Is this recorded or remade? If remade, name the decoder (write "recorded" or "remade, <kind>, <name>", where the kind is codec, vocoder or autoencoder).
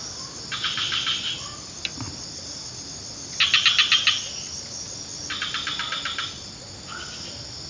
recorded